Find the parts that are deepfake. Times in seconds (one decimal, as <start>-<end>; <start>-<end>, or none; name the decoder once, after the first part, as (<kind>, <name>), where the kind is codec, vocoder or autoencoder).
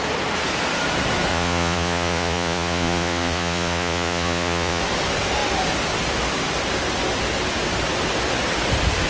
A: 1.3-4.8 (vocoder, Vocos)